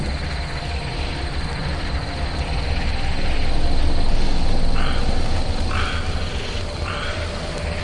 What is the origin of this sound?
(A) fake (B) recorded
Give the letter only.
B